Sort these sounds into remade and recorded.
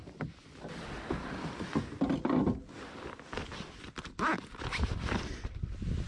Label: recorded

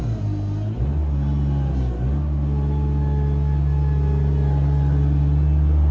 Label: recorded